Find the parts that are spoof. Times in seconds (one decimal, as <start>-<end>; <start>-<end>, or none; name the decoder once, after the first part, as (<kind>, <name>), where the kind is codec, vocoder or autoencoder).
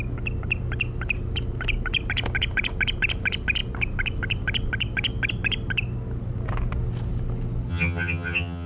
7.7-8.7 (vocoder, HiFi-GAN)